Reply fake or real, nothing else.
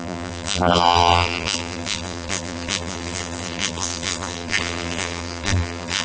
fake